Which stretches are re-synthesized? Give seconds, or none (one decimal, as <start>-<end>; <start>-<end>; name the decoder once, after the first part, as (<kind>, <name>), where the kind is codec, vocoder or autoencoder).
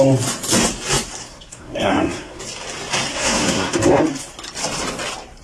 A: 1.2-2.4 (codec, SNAC); 3.1-4.0